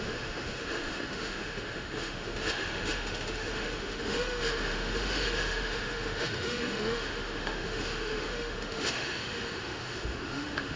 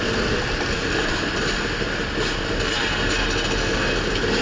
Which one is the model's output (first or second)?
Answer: first